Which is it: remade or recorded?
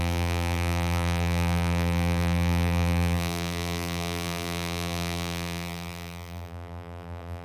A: remade